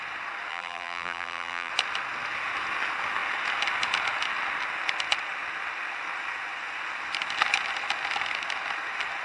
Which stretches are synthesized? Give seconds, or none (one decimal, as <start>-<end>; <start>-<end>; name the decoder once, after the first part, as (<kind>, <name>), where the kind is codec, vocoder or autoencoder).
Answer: 0.5-1.7 (vocoder, BigVGAN v2)